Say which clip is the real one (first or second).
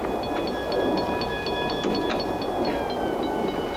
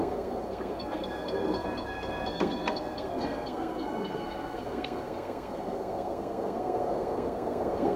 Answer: first